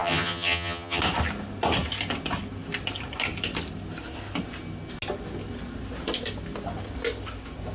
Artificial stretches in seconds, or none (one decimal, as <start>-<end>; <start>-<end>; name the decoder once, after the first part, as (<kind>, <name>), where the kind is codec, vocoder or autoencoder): 0.0-1.0 (vocoder, HiFi-GAN)